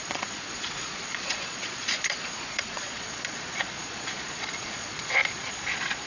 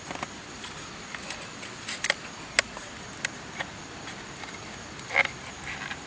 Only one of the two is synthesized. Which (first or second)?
first